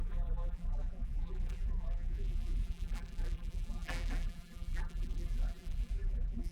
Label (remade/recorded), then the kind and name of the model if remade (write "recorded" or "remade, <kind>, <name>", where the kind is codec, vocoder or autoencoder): remade, vocoder, BigVGAN v2